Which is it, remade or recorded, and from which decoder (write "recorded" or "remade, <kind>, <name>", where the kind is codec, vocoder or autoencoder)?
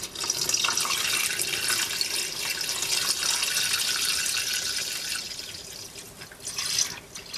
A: recorded